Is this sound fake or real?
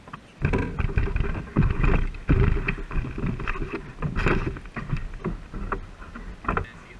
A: real